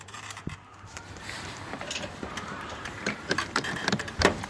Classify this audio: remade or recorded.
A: remade